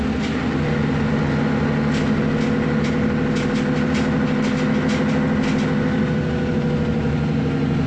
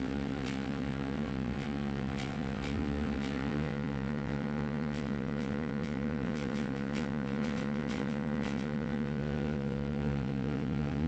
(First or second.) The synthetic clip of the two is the second